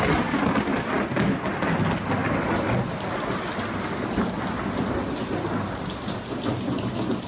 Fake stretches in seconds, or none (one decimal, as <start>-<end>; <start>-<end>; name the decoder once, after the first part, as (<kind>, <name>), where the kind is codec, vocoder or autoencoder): none